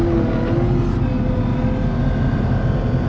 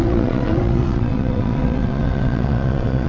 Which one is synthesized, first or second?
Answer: second